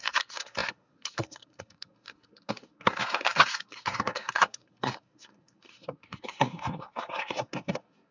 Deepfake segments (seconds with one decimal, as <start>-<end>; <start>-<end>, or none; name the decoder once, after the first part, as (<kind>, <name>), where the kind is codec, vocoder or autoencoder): 0.0-8.1 (codec, SNAC)